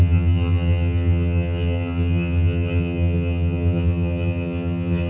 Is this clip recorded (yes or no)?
no